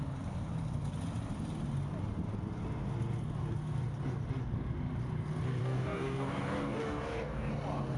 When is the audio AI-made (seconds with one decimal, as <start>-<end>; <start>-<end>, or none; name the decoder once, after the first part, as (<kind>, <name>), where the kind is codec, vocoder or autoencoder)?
5.6-7.5 (codec, DAC)